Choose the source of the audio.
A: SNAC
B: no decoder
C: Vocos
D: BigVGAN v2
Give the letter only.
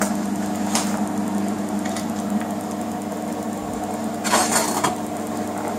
B